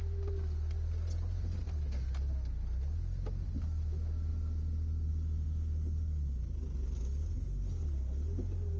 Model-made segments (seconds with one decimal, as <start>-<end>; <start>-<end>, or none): none